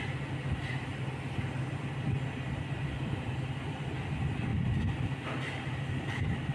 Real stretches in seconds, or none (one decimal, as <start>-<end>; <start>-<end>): 0.9-1.7

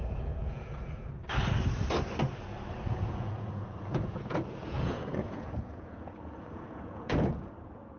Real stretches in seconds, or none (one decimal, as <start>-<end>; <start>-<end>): 1.2-2.9

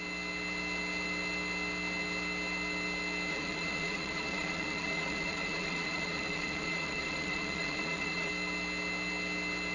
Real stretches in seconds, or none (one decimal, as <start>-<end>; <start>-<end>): 0.0-3.3; 8.3-9.7

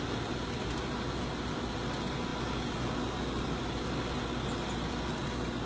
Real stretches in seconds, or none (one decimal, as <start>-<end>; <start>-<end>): 0.0-5.7

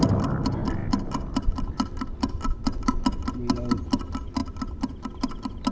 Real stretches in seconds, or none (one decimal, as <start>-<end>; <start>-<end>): 0.0-0.8; 2.9-5.7